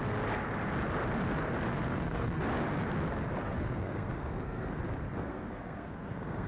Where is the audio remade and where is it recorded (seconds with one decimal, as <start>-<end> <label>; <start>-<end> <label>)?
0.0-1.7 recorded; 1.7-2.4 remade; 2.4-3.4 recorded; 3.4-4.8 remade; 4.8-5.3 recorded; 5.3-6.5 remade